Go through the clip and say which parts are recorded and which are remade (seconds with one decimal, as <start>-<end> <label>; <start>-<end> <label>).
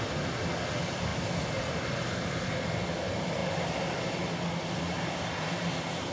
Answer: 0.0-6.1 recorded